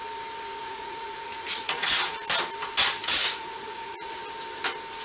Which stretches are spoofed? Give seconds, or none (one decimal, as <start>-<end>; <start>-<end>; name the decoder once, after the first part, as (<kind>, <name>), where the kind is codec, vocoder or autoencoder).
0.6-2.2 (vocoder, Vocos); 3.0-4.2